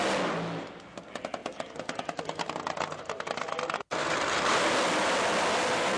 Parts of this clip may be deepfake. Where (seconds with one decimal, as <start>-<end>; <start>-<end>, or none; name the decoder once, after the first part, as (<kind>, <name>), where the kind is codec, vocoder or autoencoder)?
4.0-4.6 (vocoder, BigVGAN v2)